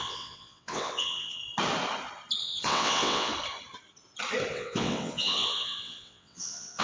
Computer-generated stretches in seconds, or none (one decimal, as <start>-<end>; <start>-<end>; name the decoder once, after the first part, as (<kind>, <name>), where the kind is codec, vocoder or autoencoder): 0.0-1.4 (vocoder, WaveNeXt); 2.4-3.3; 4.5-6.8